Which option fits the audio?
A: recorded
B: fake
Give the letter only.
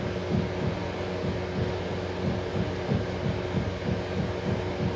A